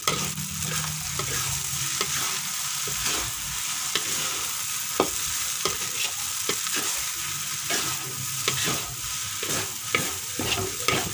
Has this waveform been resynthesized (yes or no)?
no